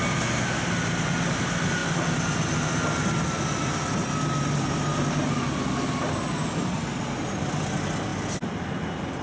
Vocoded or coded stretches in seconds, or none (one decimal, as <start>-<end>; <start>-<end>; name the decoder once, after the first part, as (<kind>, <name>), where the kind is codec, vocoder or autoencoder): none